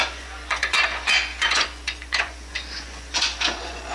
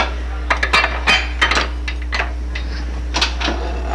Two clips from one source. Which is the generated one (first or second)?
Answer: first